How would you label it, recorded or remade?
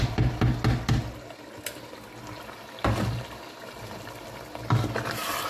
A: recorded